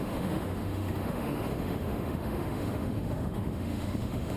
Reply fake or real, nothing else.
fake